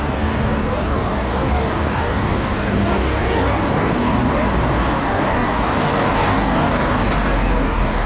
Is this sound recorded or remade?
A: remade